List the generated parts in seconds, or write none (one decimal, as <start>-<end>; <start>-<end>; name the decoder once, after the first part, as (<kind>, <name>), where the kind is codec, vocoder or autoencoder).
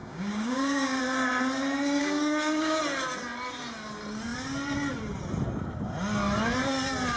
0.0-1.0 (codec, DAC); 2.0-2.8